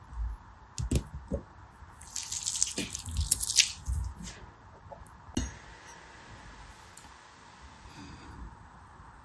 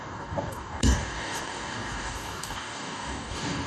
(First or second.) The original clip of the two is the first